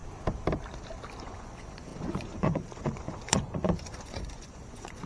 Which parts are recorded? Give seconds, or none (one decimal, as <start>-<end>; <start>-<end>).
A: 0.0-1.2